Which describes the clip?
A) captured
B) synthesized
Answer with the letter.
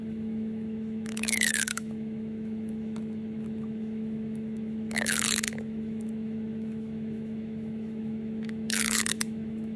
B